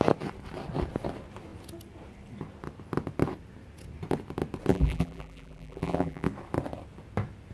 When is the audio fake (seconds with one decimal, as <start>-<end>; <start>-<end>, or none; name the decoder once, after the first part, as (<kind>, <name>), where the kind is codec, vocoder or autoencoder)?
4.7-6.3 (vocoder, BigVGAN v2)